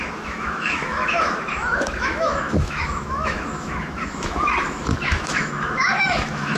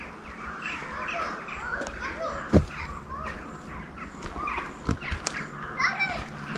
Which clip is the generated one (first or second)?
first